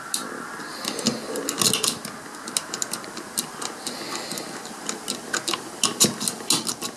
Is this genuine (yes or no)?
yes